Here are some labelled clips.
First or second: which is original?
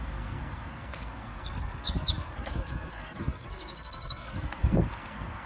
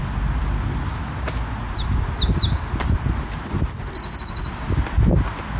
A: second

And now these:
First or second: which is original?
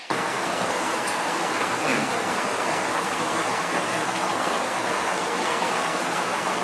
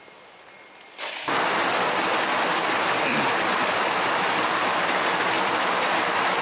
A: second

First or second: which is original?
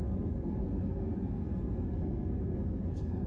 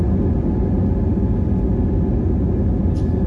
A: second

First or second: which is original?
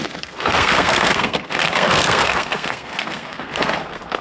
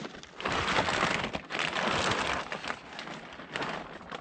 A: second